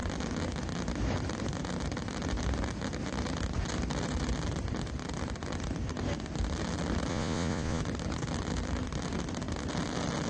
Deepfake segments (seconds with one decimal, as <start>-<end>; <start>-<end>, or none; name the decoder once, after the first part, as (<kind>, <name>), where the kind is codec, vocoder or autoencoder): 7.1-7.8 (vocoder, Vocos)